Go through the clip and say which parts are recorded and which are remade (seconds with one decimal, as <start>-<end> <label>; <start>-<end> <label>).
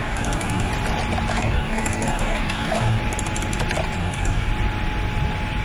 0.0-0.7 remade; 0.7-1.3 recorded; 1.3-3.0 remade; 3.0-4.0 recorded; 4.0-4.5 remade; 4.5-5.6 recorded